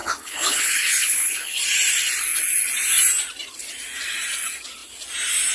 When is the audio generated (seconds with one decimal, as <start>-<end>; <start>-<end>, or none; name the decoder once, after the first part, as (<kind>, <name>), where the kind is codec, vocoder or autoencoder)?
0.0-1.6 (codec, HILCodec)